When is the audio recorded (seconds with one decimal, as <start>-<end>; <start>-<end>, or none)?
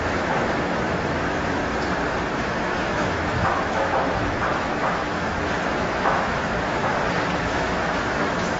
1.6-2.3; 6.9-7.4